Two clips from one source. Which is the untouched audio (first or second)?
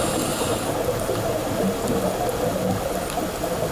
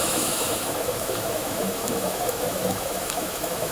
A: first